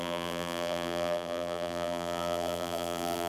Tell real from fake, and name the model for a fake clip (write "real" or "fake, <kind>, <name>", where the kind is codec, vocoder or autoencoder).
fake, vocoder, BigVGAN v2